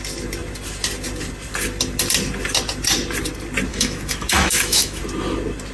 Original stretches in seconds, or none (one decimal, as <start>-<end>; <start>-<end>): 0.0-3.7; 5.0-5.7